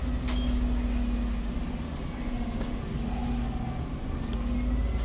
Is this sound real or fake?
real